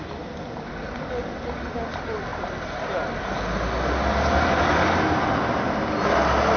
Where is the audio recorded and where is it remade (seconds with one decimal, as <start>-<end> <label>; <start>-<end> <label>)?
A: 0.0-6.6 recorded